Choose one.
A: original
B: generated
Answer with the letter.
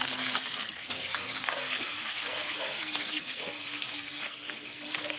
B